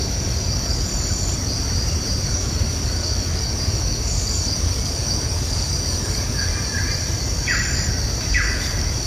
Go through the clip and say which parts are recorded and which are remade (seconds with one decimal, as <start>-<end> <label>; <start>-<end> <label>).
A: 0.0-0.9 remade; 0.9-2.3 recorded; 2.3-6.5 remade; 6.5-8.3 recorded; 8.3-9.1 remade